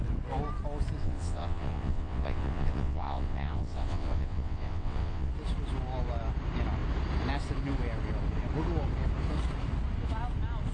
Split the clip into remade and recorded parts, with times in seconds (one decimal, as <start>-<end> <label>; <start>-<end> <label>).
0.0-1.0 recorded; 1.0-5.3 remade; 5.3-10.7 recorded